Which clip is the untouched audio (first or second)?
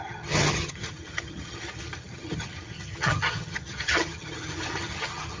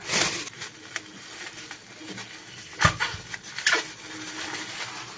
second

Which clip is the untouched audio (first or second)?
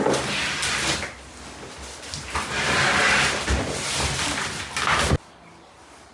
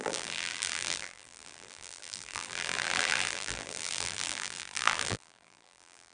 first